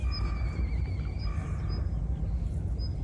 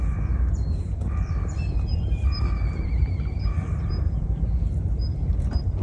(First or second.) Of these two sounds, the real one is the first